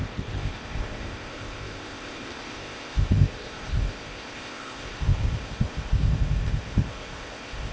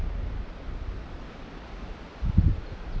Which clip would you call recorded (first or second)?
second